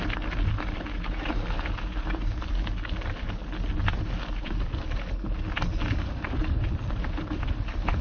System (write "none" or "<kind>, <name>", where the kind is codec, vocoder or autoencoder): none